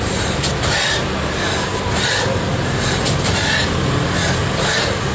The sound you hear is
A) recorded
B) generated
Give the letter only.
A